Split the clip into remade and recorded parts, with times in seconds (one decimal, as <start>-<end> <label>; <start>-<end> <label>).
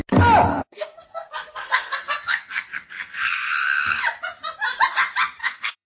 0.0-0.5 recorded; 0.5-4.0 remade; 4.0-5.4 recorded; 5.4-5.9 remade